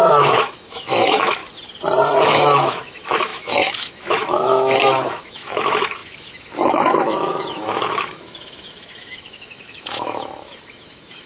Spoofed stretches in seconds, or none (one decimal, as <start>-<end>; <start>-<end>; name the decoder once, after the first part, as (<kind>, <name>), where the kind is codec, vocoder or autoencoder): 0.0-1.4 (autoencoder, DAC-VAE); 2.2-11.3